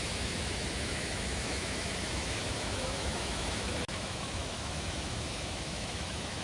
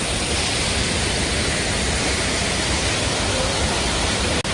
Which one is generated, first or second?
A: first